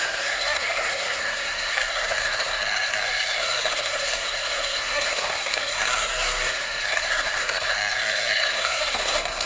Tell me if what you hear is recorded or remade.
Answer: remade